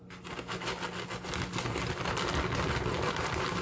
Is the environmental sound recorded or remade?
recorded